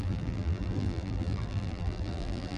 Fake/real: fake